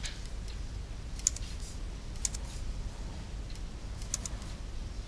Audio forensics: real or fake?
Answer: real